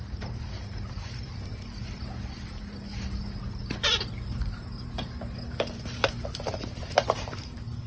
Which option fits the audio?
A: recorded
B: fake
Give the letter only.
B